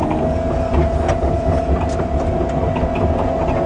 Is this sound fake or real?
real